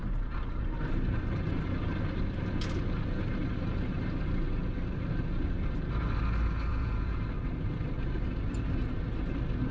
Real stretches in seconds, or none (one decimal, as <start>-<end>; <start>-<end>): 0.0-6.7; 7.2-9.7